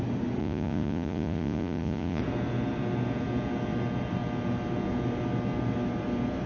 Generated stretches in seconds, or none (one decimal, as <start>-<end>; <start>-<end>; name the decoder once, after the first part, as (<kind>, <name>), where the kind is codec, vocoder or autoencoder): 0.4-2.2 (vocoder, Vocos)